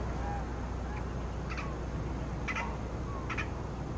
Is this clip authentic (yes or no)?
yes